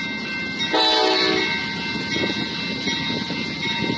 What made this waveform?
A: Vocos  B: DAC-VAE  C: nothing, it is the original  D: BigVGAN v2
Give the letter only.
C